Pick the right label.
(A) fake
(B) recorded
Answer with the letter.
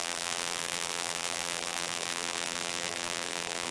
A